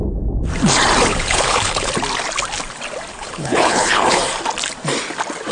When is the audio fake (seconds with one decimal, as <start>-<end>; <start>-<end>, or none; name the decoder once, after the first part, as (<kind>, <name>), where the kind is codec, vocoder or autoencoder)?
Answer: 1.1-1.9 (codec, HILCodec); 3.1-4.2